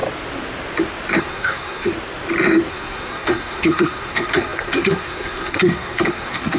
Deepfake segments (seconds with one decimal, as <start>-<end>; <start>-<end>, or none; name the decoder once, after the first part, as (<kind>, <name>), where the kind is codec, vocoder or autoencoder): 1.2-1.9 (codec, SNAC); 2.7-6.6